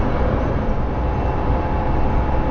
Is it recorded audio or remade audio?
recorded